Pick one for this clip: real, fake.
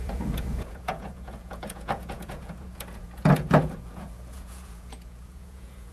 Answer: fake